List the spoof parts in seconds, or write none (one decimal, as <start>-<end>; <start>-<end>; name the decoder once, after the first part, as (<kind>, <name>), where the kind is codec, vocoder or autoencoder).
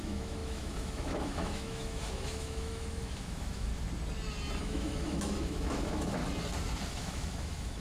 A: 0.0-3.7 (autoencoder, DAC-VAE); 4.6-6.2; 6.9-7.8